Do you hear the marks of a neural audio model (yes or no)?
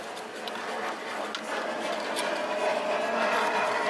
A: no